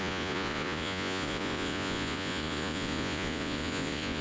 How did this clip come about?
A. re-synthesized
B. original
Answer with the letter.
A